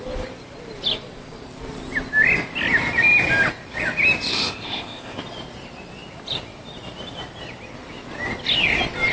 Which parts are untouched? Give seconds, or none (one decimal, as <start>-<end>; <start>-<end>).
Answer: 0.0-4.3; 5.2-9.1